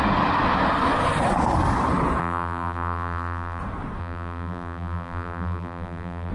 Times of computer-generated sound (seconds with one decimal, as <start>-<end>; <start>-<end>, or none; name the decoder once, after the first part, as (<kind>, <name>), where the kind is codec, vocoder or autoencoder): 2.2-3.6 (vocoder, BigVGAN v2); 4.0-6.3

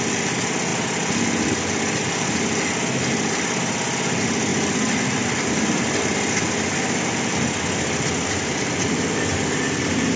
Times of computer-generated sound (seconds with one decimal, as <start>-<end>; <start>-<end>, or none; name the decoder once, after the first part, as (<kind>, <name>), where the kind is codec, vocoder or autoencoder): 0.7-2.1 (vocoder, BigVGAN v2); 4.5-7.0

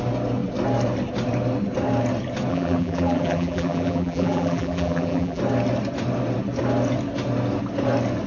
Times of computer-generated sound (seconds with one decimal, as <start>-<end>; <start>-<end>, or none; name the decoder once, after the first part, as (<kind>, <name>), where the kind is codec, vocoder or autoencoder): 2.5-5.4 (vocoder, BigVGAN v2)